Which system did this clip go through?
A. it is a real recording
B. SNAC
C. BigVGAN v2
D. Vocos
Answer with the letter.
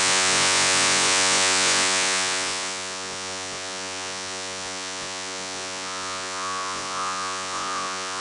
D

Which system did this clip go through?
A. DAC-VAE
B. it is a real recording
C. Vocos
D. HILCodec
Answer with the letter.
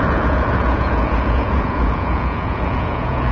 C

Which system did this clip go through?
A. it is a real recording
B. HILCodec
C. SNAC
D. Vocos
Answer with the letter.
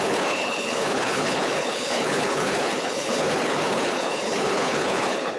B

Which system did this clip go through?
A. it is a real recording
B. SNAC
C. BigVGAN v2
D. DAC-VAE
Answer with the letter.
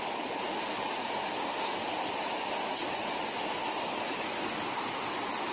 C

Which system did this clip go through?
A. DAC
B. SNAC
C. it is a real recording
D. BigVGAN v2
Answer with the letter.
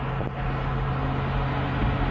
C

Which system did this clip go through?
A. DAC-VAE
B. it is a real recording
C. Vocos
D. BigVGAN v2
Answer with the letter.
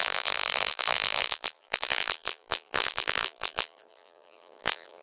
D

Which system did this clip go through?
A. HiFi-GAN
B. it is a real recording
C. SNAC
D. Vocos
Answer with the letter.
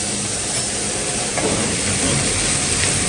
B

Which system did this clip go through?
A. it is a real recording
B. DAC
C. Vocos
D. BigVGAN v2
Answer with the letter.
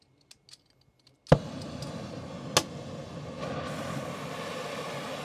A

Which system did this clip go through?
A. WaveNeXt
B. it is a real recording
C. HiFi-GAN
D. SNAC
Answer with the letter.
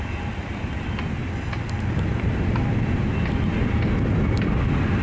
B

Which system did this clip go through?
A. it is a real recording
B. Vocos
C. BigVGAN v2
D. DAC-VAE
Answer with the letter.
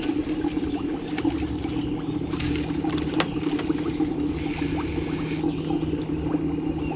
A